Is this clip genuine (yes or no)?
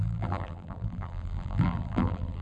no